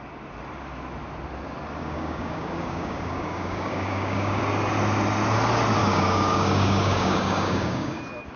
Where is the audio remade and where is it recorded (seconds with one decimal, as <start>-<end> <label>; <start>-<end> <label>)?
0.0-1.8 recorded; 1.8-4.4 remade; 4.4-5.8 recorded; 5.8-8.0 remade; 8.0-8.4 recorded